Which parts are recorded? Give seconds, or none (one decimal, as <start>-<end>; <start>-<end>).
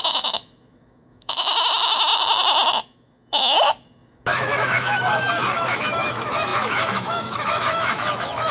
2.1-2.7